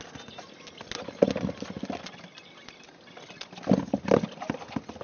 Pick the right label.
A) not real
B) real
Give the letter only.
B